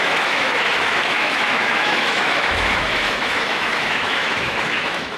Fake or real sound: fake